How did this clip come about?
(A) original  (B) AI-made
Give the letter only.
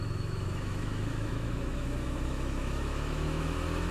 B